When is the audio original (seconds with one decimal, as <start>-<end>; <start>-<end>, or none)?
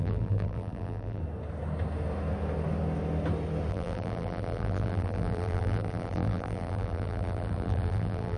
1.2-3.7